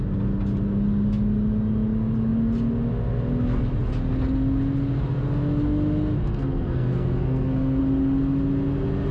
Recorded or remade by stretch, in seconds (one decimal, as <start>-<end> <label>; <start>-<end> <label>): 0.0-6.2 recorded; 6.2-7.8 remade; 7.8-9.1 recorded